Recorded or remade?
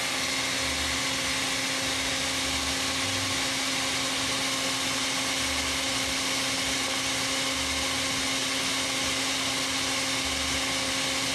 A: recorded